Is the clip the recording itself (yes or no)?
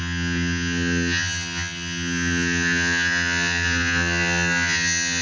no